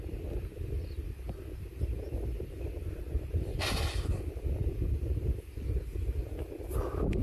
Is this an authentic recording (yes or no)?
no